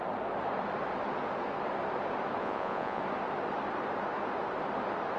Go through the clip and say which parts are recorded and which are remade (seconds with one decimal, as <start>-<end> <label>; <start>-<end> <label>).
0.0-2.4 recorded; 2.4-3.0 remade; 3.0-5.2 recorded